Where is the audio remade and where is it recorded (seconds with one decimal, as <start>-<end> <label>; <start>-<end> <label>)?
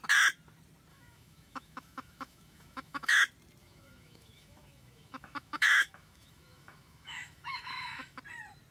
0.0-0.9 recorded; 0.9-3.2 remade; 3.2-3.6 recorded; 3.6-8.2 remade; 8.2-8.7 recorded